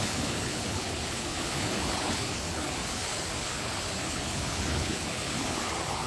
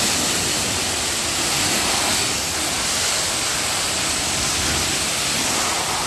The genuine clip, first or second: second